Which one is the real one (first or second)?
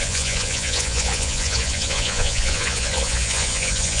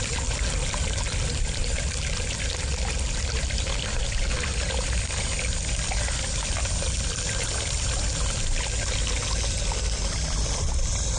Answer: second